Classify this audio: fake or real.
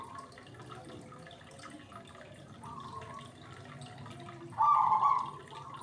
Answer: real